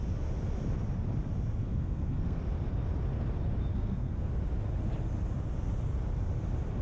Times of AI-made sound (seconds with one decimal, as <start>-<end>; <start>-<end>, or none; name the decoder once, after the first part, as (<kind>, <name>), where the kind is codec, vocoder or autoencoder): 1.6-2.4 (codec, SNAC); 3.7-4.3